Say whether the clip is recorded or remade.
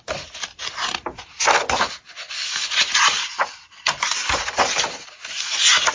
recorded